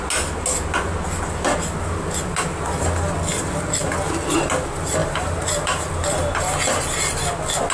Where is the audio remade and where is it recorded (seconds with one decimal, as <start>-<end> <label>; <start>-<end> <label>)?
0.0-5.0 recorded; 5.0-5.9 remade; 5.9-7.7 recorded